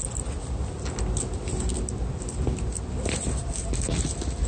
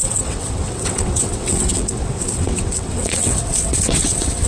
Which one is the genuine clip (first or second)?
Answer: first